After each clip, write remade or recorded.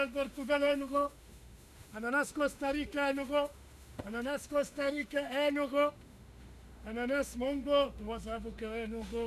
remade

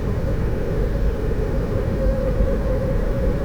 remade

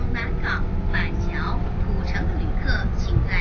recorded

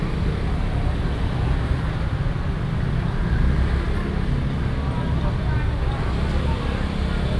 recorded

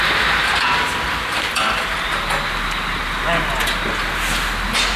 recorded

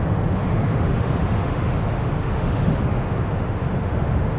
remade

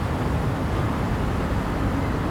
recorded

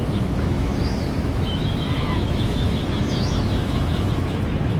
remade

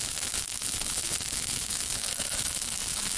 remade